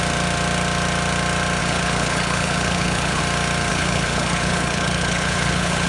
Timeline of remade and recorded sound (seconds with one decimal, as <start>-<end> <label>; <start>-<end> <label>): 0.0-1.6 recorded; 1.6-3.2 remade; 3.2-3.7 recorded; 3.7-5.9 remade